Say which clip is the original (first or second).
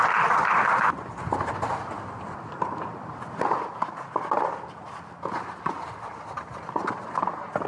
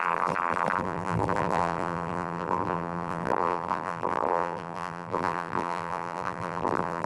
first